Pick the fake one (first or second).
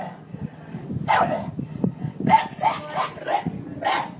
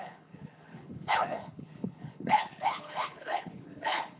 second